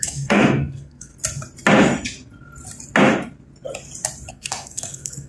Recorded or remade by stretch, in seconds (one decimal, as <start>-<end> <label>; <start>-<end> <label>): 0.0-1.1 remade; 1.1-4.3 recorded; 4.3-5.3 remade